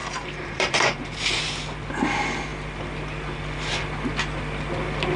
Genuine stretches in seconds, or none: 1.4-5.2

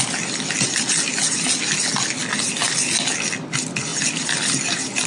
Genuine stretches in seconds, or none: 0.0-5.1

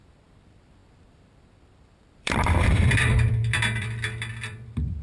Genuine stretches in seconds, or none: none